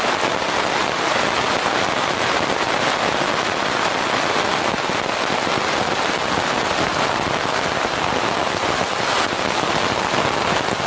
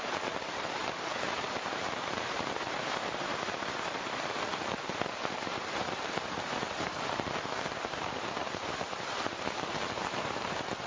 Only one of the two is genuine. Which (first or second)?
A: first